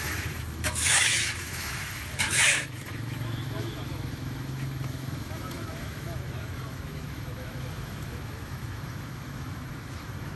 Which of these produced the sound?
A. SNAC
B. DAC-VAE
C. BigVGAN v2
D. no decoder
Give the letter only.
B